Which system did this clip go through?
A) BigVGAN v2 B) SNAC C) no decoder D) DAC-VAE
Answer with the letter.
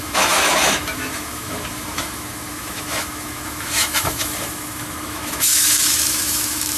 D